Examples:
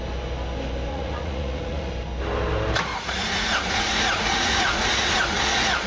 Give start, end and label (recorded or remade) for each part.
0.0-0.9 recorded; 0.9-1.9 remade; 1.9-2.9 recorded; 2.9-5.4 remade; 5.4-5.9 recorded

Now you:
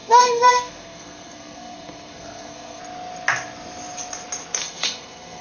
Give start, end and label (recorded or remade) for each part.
0.0-2.8 remade; 2.8-4.6 recorded; 4.6-5.4 remade

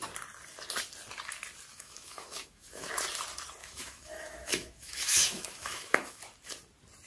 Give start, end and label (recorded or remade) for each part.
0.0-1.7 recorded; 1.7-2.9 remade; 2.9-3.6 recorded; 3.6-6.2 remade; 6.2-7.1 recorded

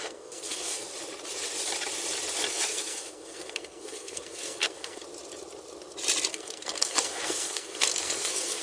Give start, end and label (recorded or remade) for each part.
0.0-0.9 remade; 0.9-2.5 recorded; 2.5-5.0 remade; 5.0-6.3 recorded; 6.3-8.6 remade

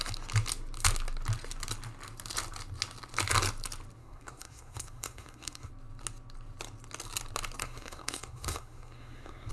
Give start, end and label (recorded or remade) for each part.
0.0-4.0 recorded; 4.0-5.7 remade; 5.7-7.6 recorded; 7.6-9.5 remade

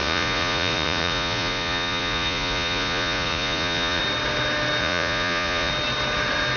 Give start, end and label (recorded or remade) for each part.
0.0-4.0 remade; 4.0-4.8 recorded; 4.8-5.7 remade; 5.7-6.6 recorded

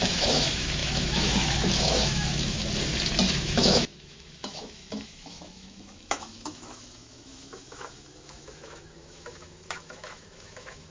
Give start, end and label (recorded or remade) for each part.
0.0-2.6 remade; 2.6-3.3 recorded; 3.3-10.9 remade